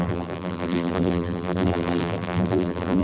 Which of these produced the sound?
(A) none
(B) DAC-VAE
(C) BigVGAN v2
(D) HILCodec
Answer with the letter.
C